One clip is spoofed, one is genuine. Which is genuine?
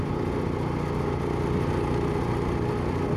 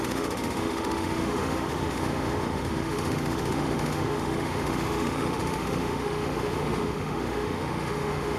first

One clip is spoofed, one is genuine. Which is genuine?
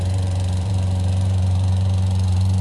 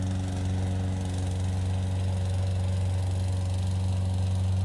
second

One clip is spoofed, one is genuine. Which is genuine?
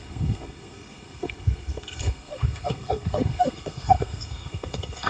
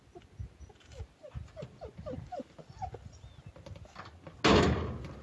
second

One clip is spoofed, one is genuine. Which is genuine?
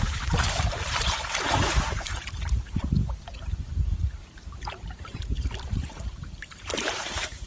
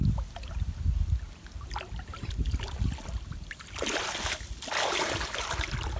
second